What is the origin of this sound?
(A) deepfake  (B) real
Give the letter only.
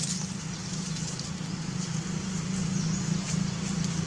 B